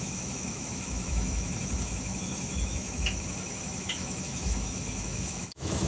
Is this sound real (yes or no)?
no